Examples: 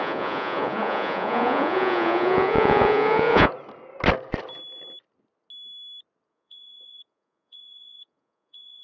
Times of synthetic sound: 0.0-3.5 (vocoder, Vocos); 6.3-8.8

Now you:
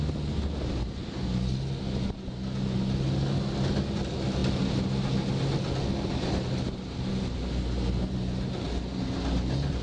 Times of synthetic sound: none

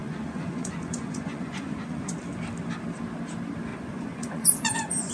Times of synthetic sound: 0.0-2.1 (vocoder, Vocos); 3.7-5.1

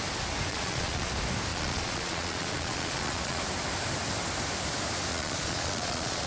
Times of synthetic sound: 0.5-1.1 (vocoder, Vocos); 1.5-3.4; 5.1-6.3

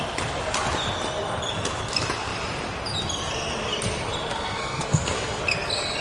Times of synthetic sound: 4.3-5.4 (codec, SNAC)

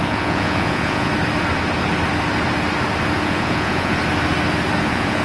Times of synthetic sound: 0.0-1.1 (vocoder, Vocos); 3.2-4.0; 4.8-5.2

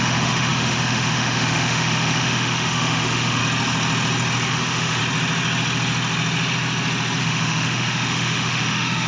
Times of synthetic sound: 0.0-3.4 (autoencoder, DAC-VAE); 4.5-5.0; 7.2-9.1